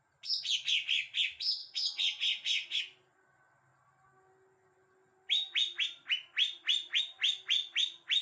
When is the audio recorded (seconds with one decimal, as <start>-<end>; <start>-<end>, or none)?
0.0-1.6; 2.8-8.2